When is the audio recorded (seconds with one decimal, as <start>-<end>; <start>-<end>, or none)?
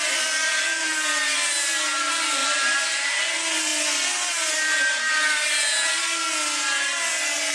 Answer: 0.0-2.4; 3.2-7.5